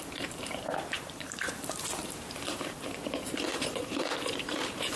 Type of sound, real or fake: fake